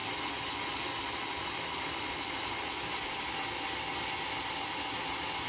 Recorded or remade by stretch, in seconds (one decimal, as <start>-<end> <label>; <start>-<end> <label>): 0.0-3.3 remade; 3.3-5.5 recorded